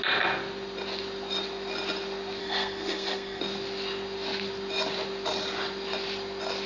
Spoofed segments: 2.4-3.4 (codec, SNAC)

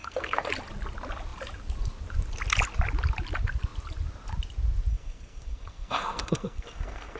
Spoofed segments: 0.0-0.5 (codec, SNAC); 4.9-7.2

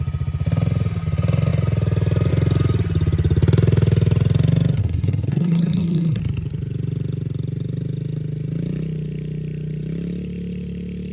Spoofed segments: 4.8-6.2 (codec, SNAC)

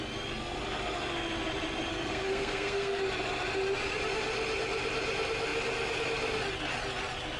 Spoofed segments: 1.9-3.0 (codec, SNAC)

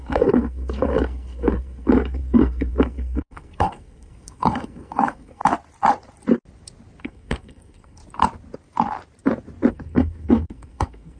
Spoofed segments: 0.0-5.4 (codec, SNAC); 7.0-8.0; 9.7-11.2

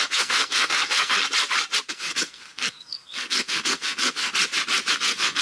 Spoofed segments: 0.0-1.2 (codec, SNAC); 1.9-4.3; 4.9-5.4

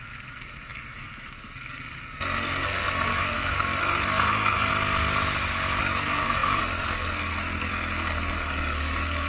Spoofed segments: 0.0-4.7 (codec, SNAC); 5.8-9.3

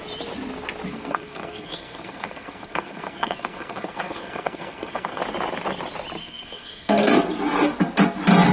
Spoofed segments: 0.9-5.2 (codec, SNAC); 6.2-7.1